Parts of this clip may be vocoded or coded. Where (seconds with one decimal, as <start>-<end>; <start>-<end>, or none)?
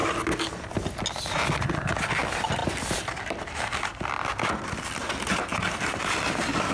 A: 2.6-6.7